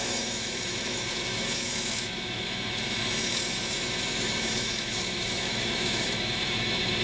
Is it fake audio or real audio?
fake